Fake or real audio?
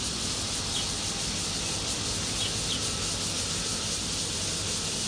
real